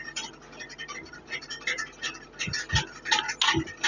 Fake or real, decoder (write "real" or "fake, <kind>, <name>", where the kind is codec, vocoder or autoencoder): real